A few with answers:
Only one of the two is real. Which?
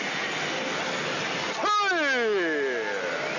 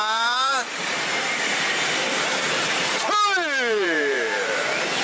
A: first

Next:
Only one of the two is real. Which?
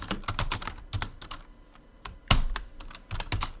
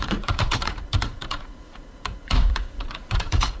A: first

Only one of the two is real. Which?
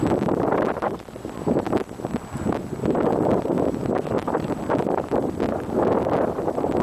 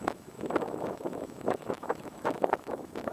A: first